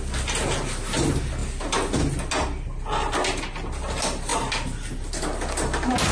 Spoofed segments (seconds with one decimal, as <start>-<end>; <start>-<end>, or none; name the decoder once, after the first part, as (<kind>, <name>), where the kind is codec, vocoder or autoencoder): none